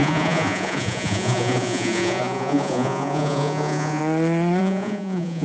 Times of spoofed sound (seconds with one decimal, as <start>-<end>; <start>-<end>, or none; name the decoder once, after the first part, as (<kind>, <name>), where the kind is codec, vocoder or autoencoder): 0.0-4.0 (vocoder, Vocos); 4.6-5.4